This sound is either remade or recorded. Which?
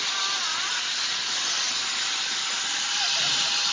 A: recorded